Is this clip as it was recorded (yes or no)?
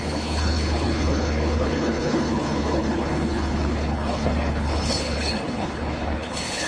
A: no